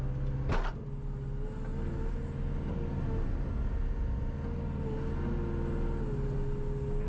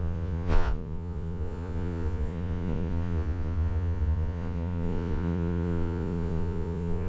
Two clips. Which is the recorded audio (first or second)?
first